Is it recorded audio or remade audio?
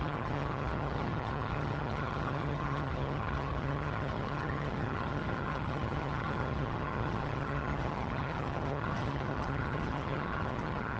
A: remade